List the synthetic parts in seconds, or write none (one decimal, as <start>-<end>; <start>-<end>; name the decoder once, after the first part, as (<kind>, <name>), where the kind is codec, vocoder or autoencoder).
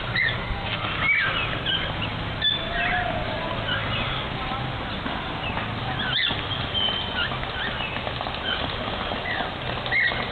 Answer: 0.4-0.9 (codec, SNAC)